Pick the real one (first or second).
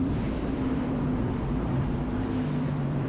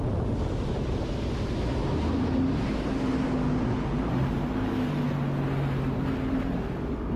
second